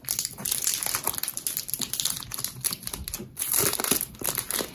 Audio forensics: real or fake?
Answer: real